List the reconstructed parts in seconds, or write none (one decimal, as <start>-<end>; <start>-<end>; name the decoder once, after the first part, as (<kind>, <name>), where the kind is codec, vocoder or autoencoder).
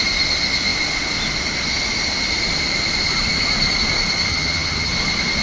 4.3-4.9 (vocoder, HiFi-GAN)